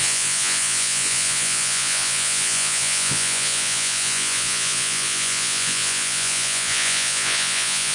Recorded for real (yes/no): no